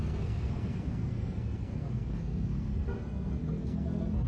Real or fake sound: fake